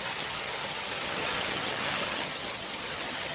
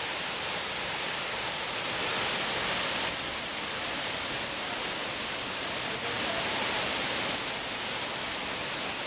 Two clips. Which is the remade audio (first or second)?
first